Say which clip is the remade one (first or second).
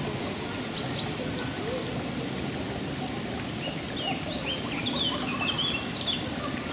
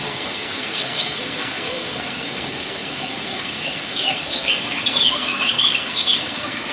second